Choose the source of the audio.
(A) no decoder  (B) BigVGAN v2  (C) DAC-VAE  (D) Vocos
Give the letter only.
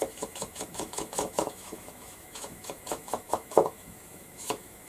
C